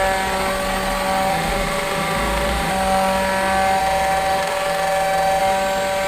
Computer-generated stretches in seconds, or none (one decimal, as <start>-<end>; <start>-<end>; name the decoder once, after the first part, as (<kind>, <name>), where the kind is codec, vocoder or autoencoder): 1.3-2.7 (autoencoder, DAC-VAE); 3.8-5.4